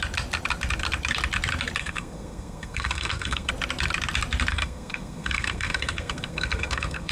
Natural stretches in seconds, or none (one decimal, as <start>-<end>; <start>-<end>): 0.0-1.8; 3.5-4.5